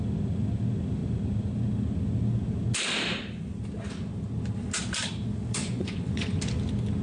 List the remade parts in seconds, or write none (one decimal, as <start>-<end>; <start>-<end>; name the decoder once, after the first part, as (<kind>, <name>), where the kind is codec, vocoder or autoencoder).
5.6-6.4 (vocoder, Vocos)